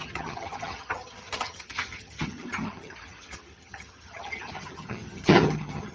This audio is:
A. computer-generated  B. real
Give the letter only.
A